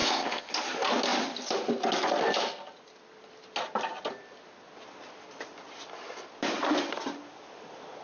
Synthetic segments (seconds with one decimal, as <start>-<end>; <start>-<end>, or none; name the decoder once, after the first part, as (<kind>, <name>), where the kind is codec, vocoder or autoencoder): 0.0-0.5 (codec, ZipCodec)